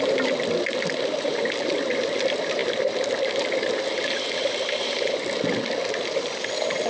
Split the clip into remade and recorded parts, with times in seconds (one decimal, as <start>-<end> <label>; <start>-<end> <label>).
0.0-6.9 recorded